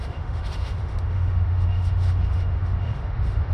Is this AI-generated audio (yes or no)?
yes